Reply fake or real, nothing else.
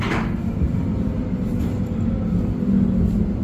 real